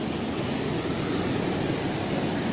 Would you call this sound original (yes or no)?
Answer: yes